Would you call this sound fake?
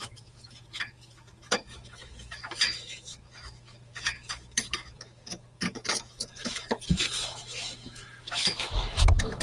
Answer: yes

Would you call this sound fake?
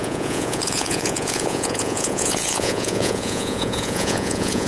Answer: yes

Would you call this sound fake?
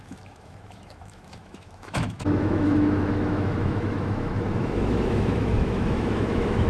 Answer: yes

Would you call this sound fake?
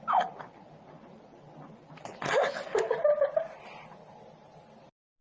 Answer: no